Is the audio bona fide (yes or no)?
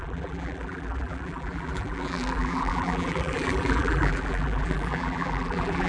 no